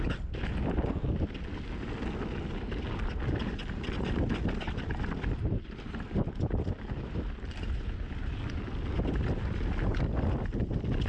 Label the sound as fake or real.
real